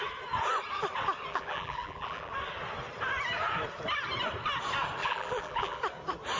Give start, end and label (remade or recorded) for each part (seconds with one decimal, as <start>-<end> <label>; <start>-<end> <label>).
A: 0.0-1.3 recorded; 1.3-2.3 remade; 2.3-5.0 recorded; 5.0-5.8 remade; 5.8-6.4 recorded